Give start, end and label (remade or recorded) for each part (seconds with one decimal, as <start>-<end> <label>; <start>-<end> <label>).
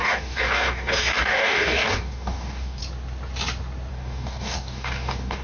0.0-2.8 remade; 2.8-3.9 recorded; 3.9-5.4 remade